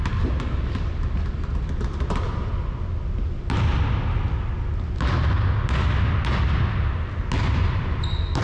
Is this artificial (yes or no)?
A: no